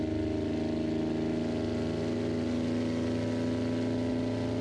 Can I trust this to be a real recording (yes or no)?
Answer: yes